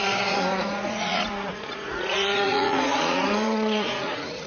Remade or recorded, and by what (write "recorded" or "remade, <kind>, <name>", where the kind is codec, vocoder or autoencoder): remade, vocoder, Vocos